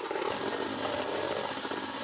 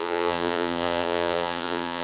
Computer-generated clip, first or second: second